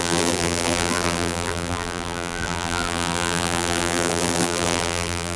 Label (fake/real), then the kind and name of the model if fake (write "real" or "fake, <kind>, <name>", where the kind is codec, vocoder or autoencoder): fake, vocoder, BigVGAN v2